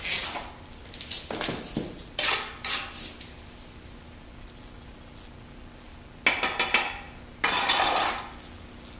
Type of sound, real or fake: real